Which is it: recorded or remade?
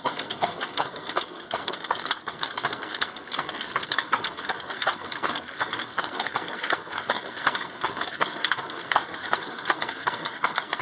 remade